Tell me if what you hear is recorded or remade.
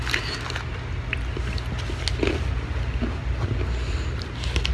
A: recorded